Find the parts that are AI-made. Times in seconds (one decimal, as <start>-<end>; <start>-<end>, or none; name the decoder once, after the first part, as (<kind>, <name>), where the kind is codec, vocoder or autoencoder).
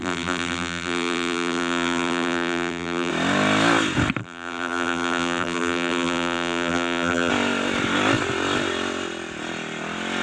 0.0-3.1 (vocoder, BigVGAN v2); 4.2-7.3